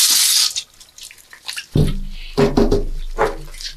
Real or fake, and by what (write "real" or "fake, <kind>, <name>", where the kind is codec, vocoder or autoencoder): real